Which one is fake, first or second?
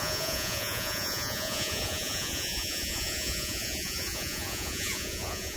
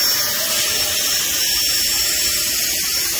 first